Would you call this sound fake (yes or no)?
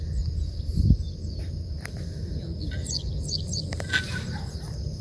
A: no